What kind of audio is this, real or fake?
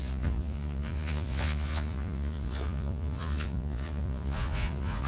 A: fake